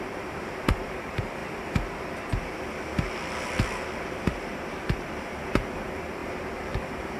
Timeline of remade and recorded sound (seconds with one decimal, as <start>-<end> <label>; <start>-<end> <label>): 0.0-1.4 remade; 1.4-5.2 recorded; 5.2-7.2 remade